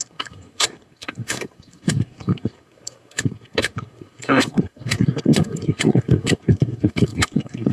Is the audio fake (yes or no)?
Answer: yes